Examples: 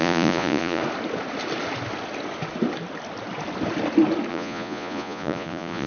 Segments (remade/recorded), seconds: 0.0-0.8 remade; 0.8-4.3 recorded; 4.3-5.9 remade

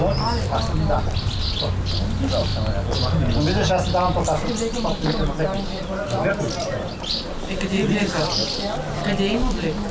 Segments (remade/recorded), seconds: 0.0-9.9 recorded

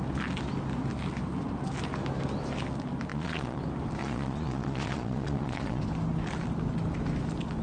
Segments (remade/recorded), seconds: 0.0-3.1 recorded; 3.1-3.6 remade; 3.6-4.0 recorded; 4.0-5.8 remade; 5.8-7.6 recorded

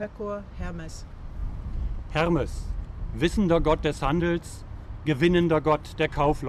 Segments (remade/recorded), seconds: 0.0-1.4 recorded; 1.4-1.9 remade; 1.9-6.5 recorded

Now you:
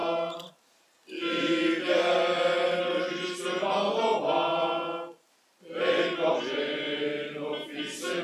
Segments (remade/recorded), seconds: 0.0-8.2 recorded